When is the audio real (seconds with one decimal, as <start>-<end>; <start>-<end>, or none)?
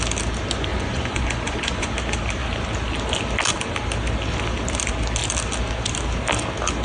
0.0-0.7; 1.9-6.8